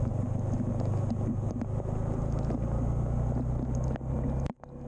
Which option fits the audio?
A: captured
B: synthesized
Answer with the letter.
A